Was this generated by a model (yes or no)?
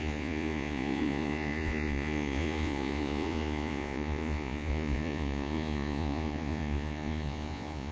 yes